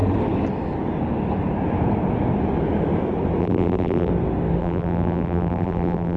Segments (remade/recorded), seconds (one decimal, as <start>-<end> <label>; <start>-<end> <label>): 0.0-3.4 recorded; 3.4-4.1 remade; 4.1-4.6 recorded; 4.6-6.2 remade